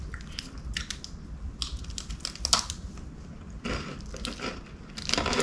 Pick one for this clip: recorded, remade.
recorded